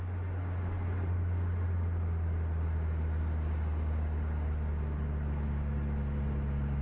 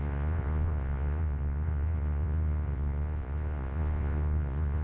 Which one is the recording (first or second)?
first